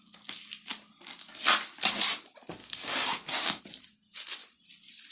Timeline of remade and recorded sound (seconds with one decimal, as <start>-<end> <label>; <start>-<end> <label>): 0.0-2.6 recorded; 2.6-3.6 remade; 3.6-5.1 recorded